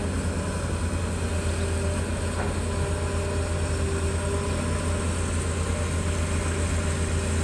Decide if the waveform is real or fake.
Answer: real